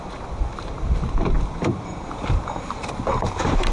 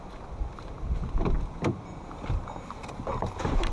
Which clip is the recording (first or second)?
second